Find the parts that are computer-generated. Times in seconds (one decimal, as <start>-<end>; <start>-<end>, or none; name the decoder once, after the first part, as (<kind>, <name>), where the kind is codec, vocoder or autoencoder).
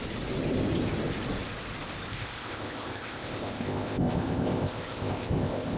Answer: 2.1-5.8 (codec, ZipCodec)